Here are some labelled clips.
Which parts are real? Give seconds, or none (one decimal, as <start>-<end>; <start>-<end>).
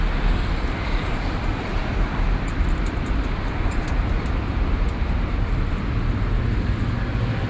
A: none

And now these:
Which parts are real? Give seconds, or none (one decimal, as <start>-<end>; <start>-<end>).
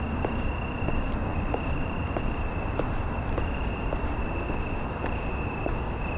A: 0.0-1.3; 2.1-6.2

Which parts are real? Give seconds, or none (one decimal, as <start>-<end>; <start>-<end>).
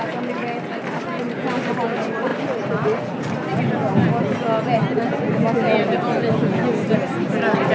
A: 0.0-7.7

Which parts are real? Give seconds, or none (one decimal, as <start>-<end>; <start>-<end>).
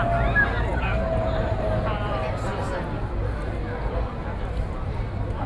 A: 0.0-0.7; 1.7-5.5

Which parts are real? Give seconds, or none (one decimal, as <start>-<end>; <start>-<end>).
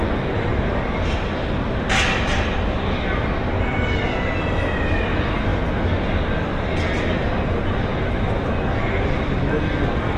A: 0.0-10.2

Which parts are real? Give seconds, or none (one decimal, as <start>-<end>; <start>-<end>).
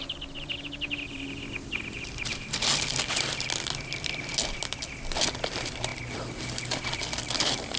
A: 0.0-7.8